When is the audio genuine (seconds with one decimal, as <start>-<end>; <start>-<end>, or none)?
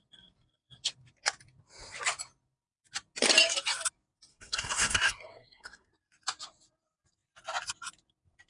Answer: 0.0-4.3; 5.9-8.5